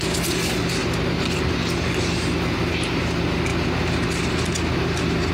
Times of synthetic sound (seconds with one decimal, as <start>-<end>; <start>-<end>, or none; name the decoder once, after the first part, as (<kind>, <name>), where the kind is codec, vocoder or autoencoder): 0.8-1.5 (vocoder, BigVGAN v2)